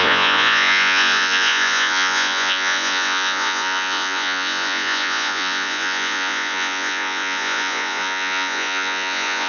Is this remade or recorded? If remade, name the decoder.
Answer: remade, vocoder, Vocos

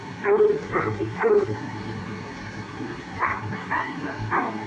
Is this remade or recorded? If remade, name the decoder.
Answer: remade, codec, SNAC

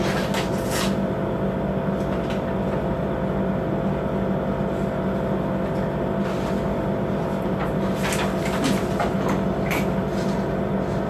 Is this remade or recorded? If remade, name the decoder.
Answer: recorded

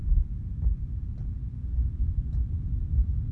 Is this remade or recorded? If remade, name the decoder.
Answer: recorded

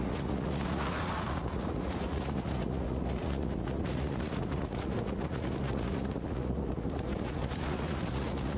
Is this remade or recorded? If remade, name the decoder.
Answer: remade, vocoder, Vocos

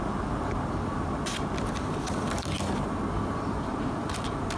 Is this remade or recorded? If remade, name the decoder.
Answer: recorded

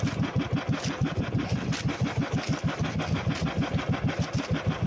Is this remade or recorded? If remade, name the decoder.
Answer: recorded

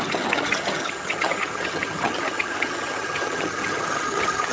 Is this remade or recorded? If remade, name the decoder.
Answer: remade, vocoder, HiFi-GAN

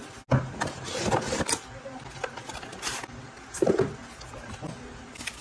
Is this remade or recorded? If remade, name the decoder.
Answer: recorded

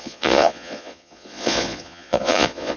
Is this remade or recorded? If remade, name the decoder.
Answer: remade, vocoder, Vocos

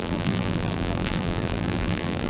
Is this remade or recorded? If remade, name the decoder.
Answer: remade, vocoder, BigVGAN v2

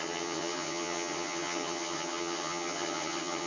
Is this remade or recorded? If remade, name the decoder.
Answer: remade, vocoder, HiFi-GAN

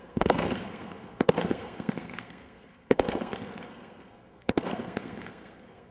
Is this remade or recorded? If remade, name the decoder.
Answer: remade, codec, SNAC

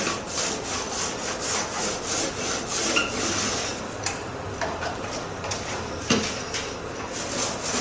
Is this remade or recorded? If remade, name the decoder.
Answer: recorded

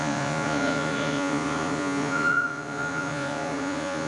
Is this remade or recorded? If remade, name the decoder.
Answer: remade, vocoder, Vocos